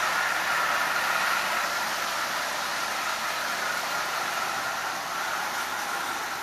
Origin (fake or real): real